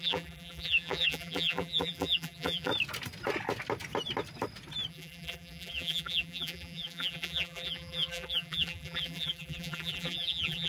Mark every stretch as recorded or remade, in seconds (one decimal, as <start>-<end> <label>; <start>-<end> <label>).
0.0-2.7 remade; 2.7-4.9 recorded; 4.9-10.7 remade